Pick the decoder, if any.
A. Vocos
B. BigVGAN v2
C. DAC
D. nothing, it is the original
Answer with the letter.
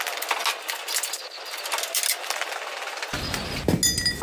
D